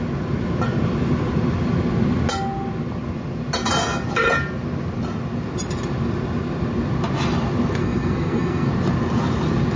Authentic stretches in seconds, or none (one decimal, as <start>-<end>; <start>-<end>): 0.0-7.8; 8.7-9.8